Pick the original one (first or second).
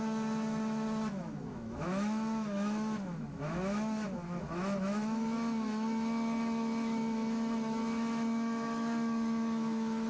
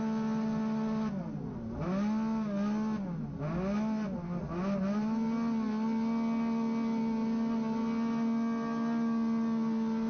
second